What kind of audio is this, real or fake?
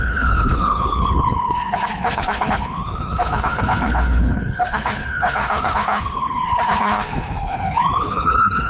fake